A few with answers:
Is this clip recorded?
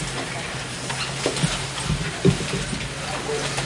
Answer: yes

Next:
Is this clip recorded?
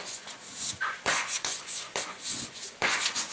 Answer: no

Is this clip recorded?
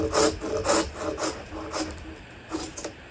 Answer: yes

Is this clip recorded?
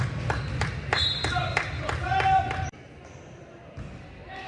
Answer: yes